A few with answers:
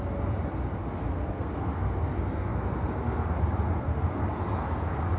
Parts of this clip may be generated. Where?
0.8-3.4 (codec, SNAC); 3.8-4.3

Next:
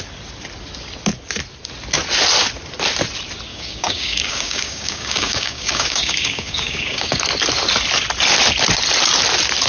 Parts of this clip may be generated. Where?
3.5-7.2 (codec, DAC)